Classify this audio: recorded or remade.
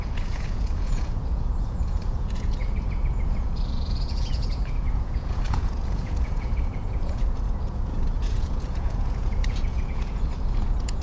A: remade